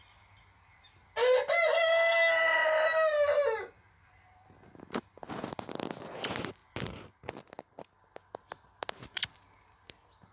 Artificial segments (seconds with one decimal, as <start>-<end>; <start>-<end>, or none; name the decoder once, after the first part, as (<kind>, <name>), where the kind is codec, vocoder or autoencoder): none